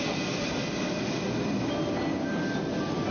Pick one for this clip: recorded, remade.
recorded